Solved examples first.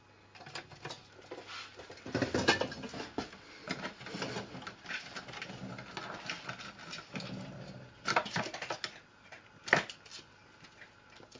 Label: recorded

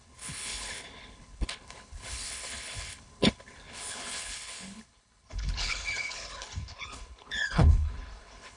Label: remade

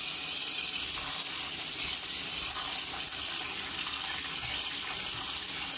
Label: recorded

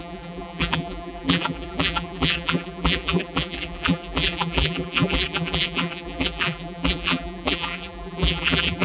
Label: remade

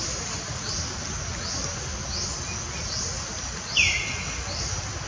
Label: recorded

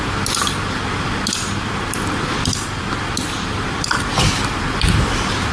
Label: recorded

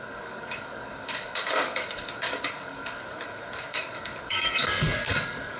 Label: remade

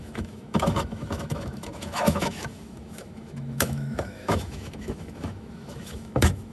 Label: remade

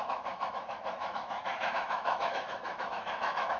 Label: remade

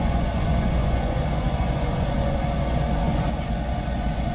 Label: remade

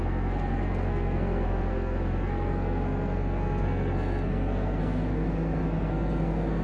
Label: remade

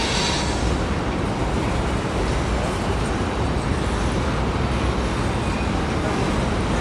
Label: recorded